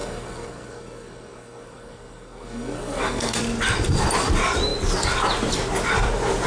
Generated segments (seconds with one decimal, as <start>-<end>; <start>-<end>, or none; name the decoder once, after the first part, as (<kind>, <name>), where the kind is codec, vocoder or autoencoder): 0.0-3.4 (codec, SNAC)